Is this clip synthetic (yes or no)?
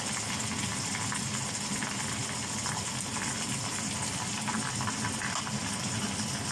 no